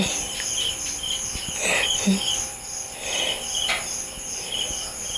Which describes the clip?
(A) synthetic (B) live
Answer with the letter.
B